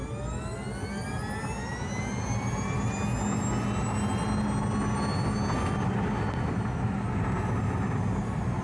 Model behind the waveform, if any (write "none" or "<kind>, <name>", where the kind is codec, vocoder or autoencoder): none